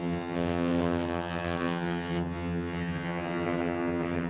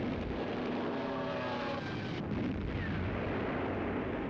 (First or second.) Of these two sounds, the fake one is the first